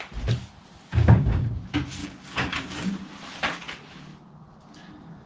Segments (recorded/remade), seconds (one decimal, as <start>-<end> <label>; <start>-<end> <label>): 0.0-0.9 recorded; 0.9-1.5 remade; 1.5-2.0 recorded; 2.0-2.9 remade; 2.9-5.3 recorded